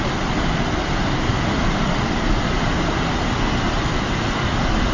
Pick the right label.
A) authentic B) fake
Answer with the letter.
A